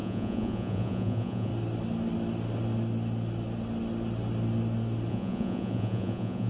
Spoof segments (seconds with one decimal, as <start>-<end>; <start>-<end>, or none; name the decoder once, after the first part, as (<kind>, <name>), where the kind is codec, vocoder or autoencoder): 0.0-1.5 (vocoder, Vocos); 5.1-6.5